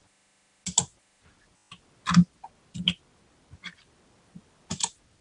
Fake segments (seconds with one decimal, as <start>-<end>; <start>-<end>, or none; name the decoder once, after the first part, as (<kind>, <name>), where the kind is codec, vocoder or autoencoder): none